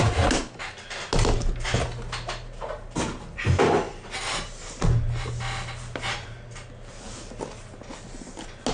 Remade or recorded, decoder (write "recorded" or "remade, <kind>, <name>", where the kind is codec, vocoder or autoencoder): recorded